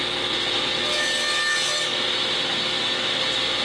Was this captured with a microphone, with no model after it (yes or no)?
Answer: yes